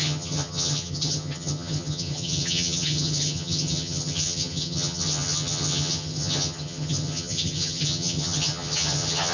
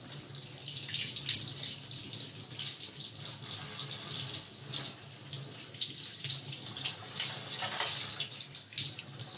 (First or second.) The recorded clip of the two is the second